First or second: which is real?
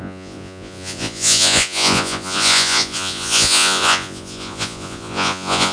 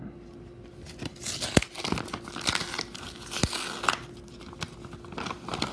second